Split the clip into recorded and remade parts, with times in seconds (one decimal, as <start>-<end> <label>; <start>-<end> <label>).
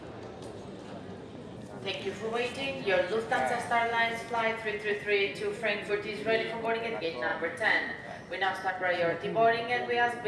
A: 0.0-7.3 recorded; 7.3-8.7 remade; 8.7-10.3 recorded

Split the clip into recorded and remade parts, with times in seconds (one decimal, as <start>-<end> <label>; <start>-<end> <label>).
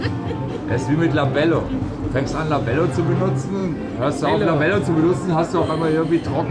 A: 0.0-6.5 recorded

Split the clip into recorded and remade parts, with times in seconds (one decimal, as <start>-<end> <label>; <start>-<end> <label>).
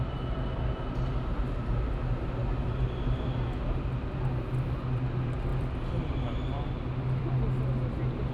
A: 0.0-5.5 recorded; 5.5-7.3 remade; 7.3-8.3 recorded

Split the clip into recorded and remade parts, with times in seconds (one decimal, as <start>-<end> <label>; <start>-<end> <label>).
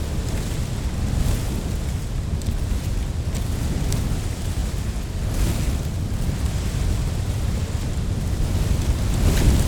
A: 0.0-9.7 recorded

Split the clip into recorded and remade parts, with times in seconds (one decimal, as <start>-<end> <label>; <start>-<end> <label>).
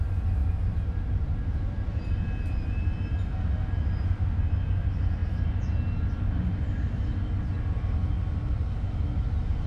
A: 0.0-0.4 recorded; 0.4-2.1 remade; 2.1-9.7 recorded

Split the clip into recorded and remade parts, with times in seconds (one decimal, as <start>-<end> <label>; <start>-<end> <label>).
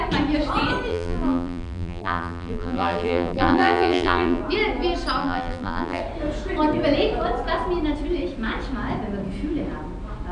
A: 0.0-0.9 recorded; 0.9-4.4 remade; 4.4-5.2 recorded; 5.2-6.0 remade; 6.0-10.3 recorded